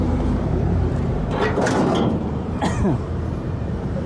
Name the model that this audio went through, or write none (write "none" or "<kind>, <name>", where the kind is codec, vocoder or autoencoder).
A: vocoder, BigVGAN v2